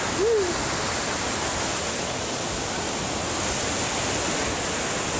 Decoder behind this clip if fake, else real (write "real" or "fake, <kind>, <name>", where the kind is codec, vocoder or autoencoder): real